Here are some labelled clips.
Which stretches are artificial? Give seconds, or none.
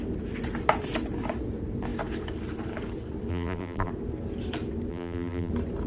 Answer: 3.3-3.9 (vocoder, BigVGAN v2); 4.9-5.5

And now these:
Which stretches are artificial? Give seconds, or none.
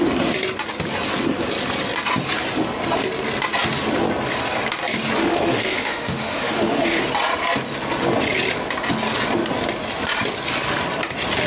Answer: 5.2-7.0 (autoencoder, DAC-VAE)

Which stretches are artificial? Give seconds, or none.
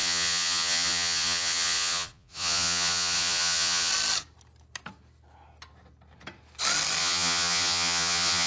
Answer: 0.0-3.9 (vocoder, Vocos); 7.0-8.5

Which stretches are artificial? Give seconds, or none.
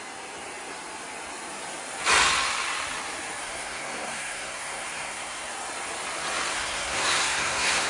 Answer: 3.4-5.5 (codec, SNAC); 6.5-7.9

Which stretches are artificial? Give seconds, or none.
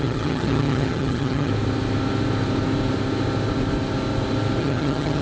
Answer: 0.0-1.5 (vocoder, HiFi-GAN); 4.6-5.2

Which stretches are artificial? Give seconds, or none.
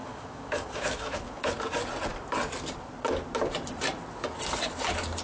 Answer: 0.0-1.5 (autoencoder, DAC-VAE)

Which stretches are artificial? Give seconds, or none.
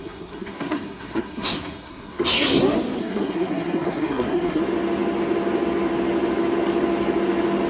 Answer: 0.0-2.6 (codec, SNAC); 3.0-4.6